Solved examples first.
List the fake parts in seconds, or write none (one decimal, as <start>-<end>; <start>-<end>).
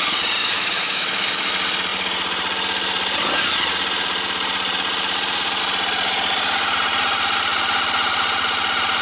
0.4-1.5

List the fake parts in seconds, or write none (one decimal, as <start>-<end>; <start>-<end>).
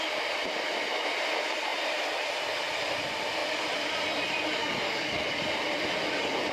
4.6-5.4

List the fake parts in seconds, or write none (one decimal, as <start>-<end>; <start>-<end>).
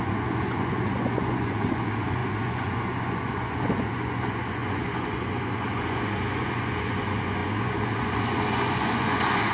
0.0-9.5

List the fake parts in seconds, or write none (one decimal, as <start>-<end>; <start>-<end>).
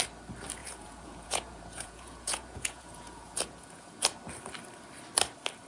0.6-4.0